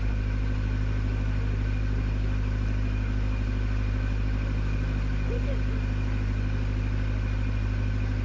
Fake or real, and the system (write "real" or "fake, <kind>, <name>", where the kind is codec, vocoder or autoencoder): real